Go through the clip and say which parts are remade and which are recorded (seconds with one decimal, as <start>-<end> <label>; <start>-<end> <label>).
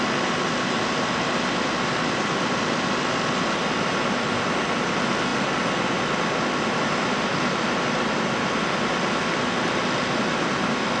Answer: 0.0-11.0 recorded